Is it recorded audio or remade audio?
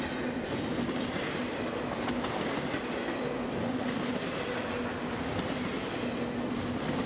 recorded